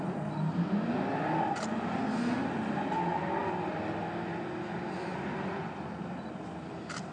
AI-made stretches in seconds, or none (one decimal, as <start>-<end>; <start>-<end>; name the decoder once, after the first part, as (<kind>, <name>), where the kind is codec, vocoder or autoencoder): none